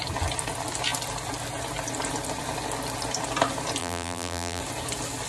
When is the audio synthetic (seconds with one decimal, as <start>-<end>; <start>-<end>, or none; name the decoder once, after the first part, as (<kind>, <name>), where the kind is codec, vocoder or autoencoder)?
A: 3.8-4.6 (vocoder, BigVGAN v2)